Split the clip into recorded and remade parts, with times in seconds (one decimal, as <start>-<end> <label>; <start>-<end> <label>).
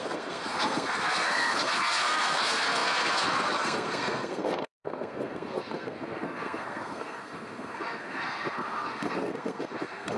0.0-10.2 remade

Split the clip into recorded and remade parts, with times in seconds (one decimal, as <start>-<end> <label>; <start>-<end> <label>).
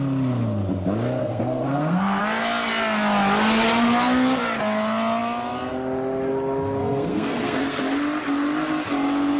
0.0-1.2 recorded; 1.2-2.2 remade; 2.2-6.8 recorded; 6.8-7.8 remade; 7.8-9.4 recorded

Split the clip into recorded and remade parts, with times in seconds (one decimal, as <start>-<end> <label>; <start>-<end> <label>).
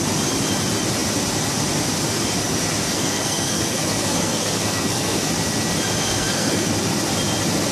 0.0-2.8 recorded; 2.8-5.3 remade; 5.3-6.0 recorded; 6.0-6.7 remade; 6.7-7.7 recorded